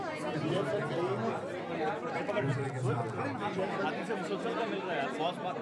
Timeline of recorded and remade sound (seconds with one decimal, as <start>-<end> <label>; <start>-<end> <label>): 0.0-5.6 recorded